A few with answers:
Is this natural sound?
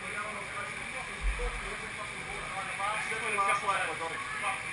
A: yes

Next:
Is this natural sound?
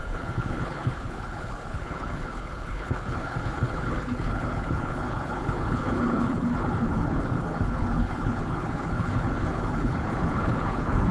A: no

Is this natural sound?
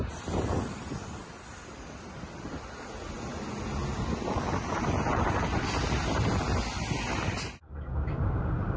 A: yes